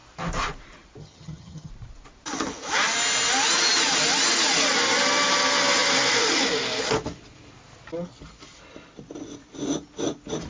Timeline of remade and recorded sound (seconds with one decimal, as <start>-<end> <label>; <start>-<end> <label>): 0.0-1.0 recorded; 1.0-1.7 remade; 1.7-10.5 recorded